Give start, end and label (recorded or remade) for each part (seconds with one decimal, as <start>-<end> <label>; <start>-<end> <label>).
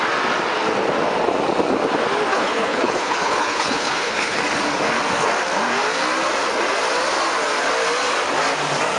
0.0-2.3 recorded; 2.3-4.4 remade; 4.4-9.0 recorded